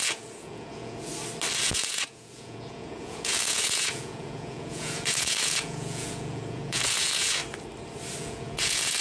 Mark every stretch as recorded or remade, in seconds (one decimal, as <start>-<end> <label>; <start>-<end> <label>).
0.0-1.1 remade; 1.1-1.6 recorded; 1.6-7.4 remade; 7.4-8.2 recorded; 8.2-9.0 remade